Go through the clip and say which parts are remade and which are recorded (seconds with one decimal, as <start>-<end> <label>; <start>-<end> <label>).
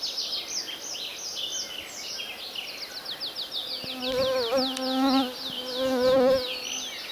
0.0-7.1 recorded